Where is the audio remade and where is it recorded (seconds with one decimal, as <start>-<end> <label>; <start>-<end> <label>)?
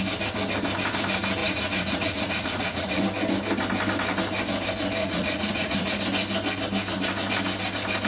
0.0-1.4 recorded; 1.4-3.0 remade; 3.0-5.0 recorded; 5.0-6.0 remade; 6.0-8.1 recorded